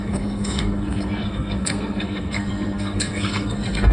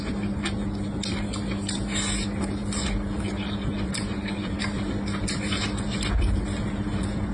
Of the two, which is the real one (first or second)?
second